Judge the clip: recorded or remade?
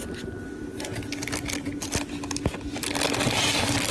recorded